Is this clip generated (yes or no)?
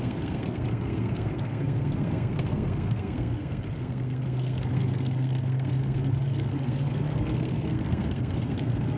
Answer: yes